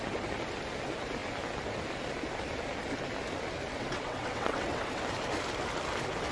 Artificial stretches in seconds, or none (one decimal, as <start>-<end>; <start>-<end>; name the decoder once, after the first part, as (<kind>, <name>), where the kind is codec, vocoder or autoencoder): 3.7-5.0 (vocoder, WaveNeXt)